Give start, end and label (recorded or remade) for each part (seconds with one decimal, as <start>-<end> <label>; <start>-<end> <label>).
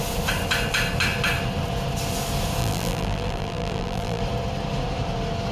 0.0-2.6 recorded; 2.6-4.2 remade; 4.2-5.5 recorded